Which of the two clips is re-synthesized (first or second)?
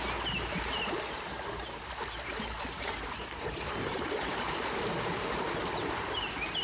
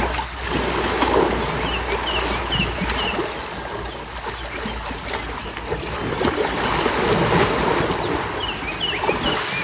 first